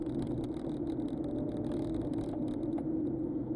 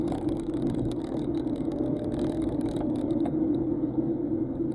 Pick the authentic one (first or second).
first